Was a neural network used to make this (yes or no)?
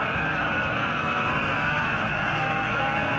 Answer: yes